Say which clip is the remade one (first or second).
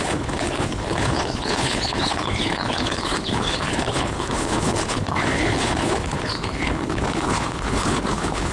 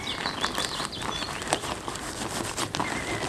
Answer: first